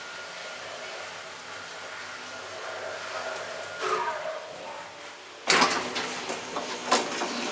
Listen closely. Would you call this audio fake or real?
real